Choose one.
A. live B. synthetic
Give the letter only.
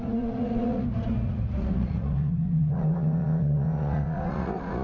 B